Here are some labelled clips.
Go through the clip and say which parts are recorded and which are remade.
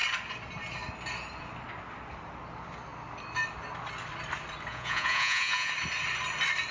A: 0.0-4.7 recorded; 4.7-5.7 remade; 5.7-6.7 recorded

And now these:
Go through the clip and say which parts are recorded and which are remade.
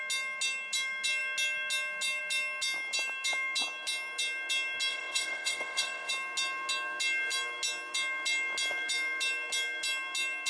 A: 0.0-4.9 recorded; 4.9-6.1 remade; 6.1-10.5 recorded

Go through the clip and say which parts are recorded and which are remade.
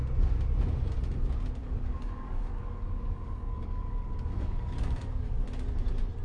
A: 0.0-1.6 recorded; 1.6-5.3 remade; 5.3-6.2 recorded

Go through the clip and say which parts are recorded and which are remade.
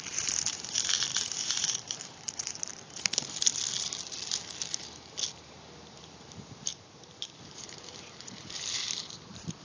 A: 0.0-2.7 remade; 2.7-6.0 recorded; 6.0-9.6 remade